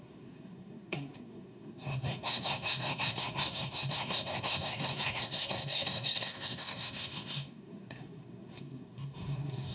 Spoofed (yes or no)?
yes